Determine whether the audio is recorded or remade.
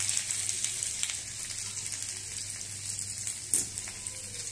recorded